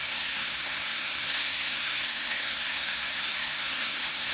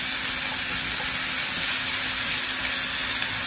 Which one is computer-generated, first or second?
first